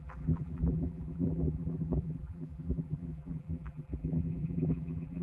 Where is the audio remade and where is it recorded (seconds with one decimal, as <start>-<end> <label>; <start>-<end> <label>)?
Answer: 0.0-5.2 remade